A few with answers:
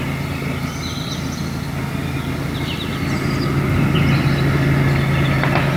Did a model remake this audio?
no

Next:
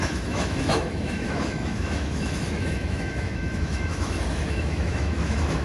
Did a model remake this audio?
yes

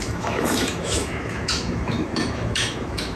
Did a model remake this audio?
yes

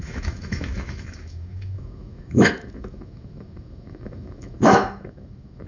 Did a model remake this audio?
yes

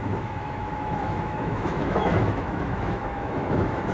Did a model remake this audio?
yes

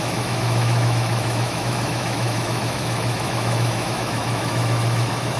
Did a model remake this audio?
yes